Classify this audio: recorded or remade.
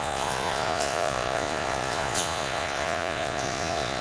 remade